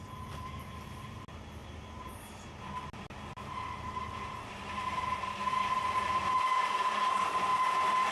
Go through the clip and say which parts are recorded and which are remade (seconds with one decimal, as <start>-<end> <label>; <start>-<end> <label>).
0.0-7.5 recorded; 7.5-8.1 remade